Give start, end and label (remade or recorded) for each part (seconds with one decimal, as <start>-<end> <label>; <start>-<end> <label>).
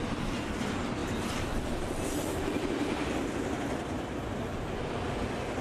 0.0-1.0 recorded; 1.0-3.6 remade; 3.6-4.5 recorded; 4.5-5.0 remade; 5.0-5.6 recorded